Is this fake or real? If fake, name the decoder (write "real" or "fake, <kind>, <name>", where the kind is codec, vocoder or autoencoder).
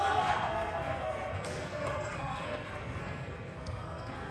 fake, codec, SNAC